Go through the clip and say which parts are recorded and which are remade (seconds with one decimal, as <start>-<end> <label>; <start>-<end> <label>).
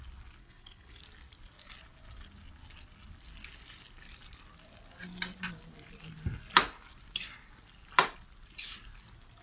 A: 0.0-0.4 recorded; 0.4-1.0 remade; 1.0-9.4 recorded